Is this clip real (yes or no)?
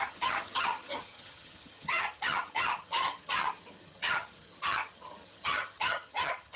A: no